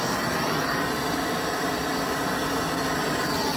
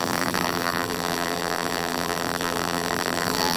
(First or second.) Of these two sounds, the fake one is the second